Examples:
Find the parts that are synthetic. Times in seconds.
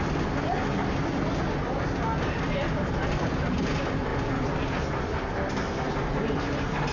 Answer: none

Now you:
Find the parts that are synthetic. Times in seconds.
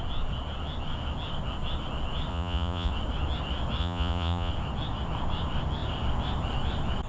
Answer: 2.3-2.9 (vocoder, Vocos); 3.8-4.5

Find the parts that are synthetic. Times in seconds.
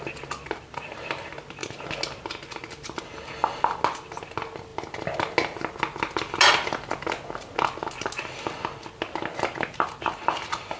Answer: none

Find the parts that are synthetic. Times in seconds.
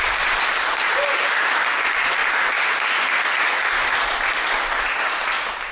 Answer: none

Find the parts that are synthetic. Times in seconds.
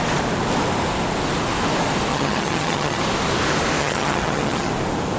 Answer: 2.1-3.0 (vocoder, HiFi-GAN); 3.8-4.7